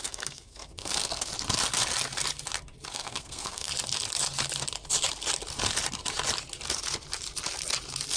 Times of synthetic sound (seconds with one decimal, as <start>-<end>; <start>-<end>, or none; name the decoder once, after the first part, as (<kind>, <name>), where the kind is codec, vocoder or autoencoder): 0.0-1.3 (codec, SNAC); 2.9-3.7